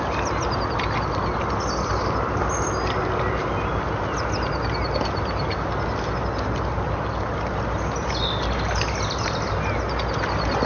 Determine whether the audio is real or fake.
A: real